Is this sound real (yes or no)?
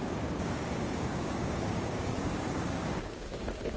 no